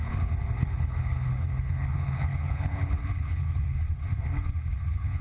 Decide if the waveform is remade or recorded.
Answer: remade